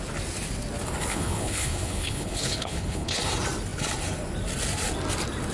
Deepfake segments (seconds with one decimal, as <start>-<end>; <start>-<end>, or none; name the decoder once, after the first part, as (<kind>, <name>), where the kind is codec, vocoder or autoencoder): 1.1-3.2 (codec, HILCodec)